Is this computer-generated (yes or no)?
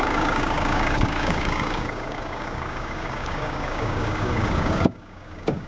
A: yes